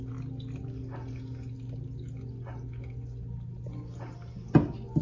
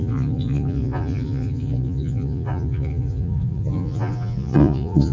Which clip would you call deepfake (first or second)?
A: second